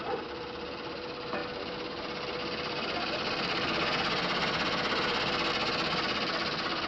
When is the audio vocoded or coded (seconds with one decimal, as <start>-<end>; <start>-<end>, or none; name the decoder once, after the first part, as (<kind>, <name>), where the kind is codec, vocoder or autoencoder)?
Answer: none